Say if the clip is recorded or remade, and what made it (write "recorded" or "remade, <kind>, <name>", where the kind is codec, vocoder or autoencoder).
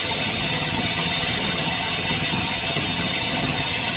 remade, vocoder, HiFi-GAN